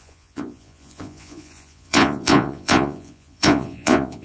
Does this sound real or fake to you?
fake